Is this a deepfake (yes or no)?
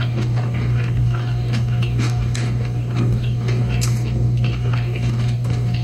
yes